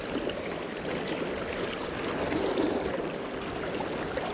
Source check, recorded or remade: recorded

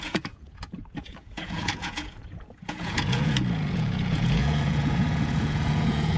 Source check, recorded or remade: remade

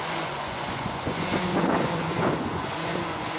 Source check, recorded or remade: remade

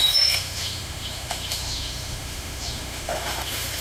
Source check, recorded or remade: remade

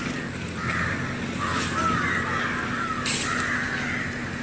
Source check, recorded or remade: recorded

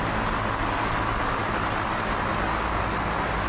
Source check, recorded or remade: recorded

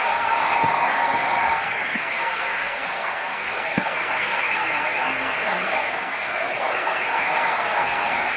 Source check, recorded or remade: remade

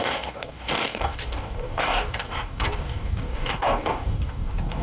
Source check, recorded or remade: remade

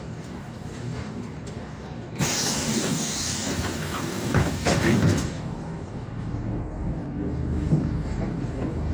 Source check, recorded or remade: remade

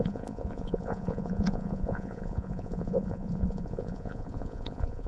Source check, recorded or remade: remade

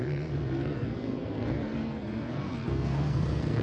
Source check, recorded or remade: remade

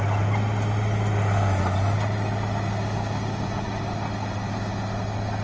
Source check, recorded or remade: recorded